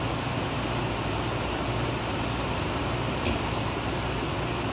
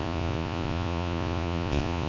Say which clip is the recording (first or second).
first